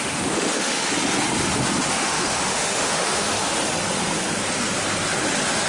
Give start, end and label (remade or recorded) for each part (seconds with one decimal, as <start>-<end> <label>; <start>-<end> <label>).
0.0-0.9 remade; 0.9-1.9 recorded; 1.9-3.6 remade; 3.6-5.7 recorded